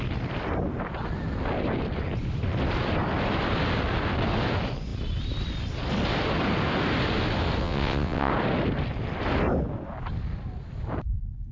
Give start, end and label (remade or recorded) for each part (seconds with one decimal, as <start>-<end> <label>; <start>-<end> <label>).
0.0-7.6 recorded; 7.6-8.3 remade; 8.3-11.5 recorded